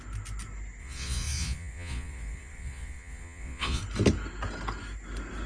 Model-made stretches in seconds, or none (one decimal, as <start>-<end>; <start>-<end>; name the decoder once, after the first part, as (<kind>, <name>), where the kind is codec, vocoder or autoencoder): 0.8-3.8 (vocoder, Vocos)